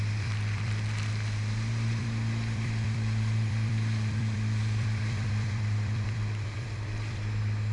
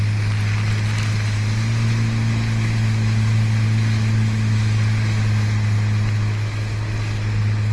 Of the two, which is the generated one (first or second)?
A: first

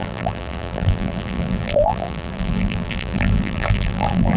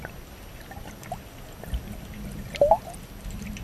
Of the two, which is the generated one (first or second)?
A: first